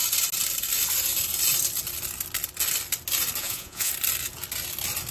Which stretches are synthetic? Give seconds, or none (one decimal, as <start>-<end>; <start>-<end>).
3.4-3.9